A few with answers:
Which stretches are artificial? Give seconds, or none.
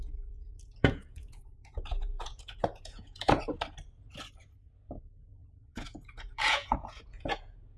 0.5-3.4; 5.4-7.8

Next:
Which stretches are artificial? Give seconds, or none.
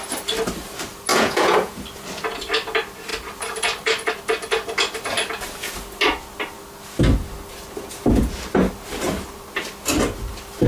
1.1-1.8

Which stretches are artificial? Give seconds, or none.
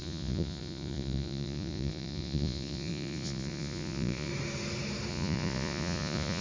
0.0-4.3; 5.1-6.4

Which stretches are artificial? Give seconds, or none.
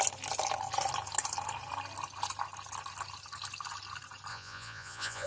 4.3-5.3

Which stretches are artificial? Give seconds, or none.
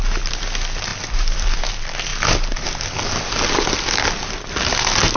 none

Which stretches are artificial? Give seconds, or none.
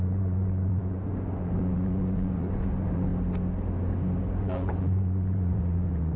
0.0-3.1; 4.2-6.2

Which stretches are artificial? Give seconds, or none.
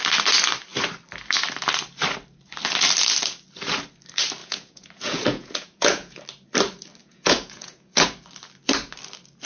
4.4-6.2; 7.0-8.1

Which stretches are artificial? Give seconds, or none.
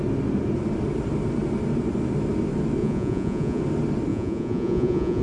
2.8-3.6; 4.1-5.2